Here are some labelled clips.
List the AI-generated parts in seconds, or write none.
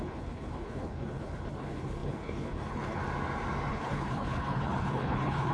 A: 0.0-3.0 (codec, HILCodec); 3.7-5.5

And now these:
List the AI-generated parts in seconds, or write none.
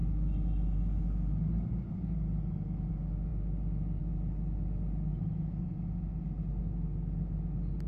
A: none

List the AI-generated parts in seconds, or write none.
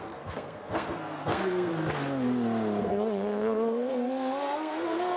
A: 0.0-1.7 (codec, SNAC); 2.8-5.2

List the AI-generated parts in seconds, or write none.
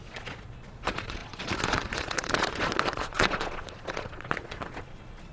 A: 0.0-5.3 (vocoder, Vocos)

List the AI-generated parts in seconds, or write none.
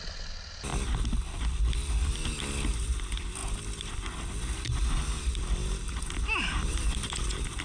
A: 5.6-7.1 (vocoder, BigVGAN v2)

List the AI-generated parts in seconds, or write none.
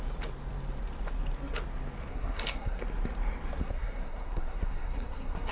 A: 2.1-2.8 (codec, SNAC); 3.6-5.5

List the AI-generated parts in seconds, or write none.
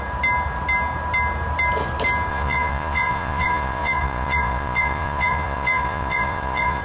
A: 2.3-6.8 (vocoder, Vocos)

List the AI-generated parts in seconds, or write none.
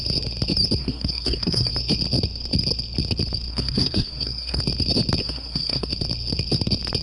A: 0.8-1.7 (codec, SNAC); 3.5-4.6; 5.2-5.9